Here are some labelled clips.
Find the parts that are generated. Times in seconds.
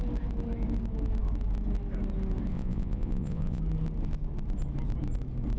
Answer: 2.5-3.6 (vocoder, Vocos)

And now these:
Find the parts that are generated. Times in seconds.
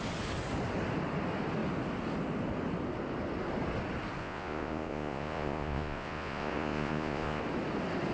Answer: 4.2-7.4 (vocoder, Vocos)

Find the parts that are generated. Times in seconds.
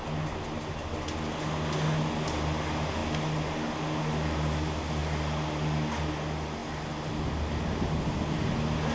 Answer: none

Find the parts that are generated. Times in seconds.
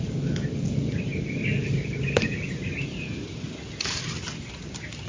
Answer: none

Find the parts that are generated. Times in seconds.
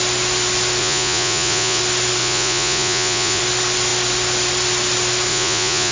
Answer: 0.8-1.8 (vocoder, Vocos); 2.2-3.4; 5.3-5.9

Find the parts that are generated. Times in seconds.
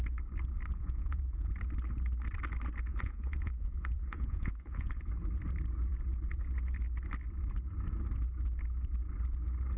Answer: 0.7-1.5 (vocoder, Vocos); 2.9-5.1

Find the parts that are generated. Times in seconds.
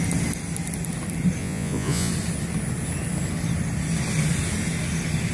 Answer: 1.4-2.1 (vocoder, Vocos)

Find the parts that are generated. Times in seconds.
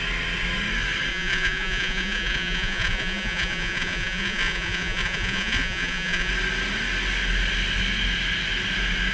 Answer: 1.1-6.3 (vocoder, Vocos)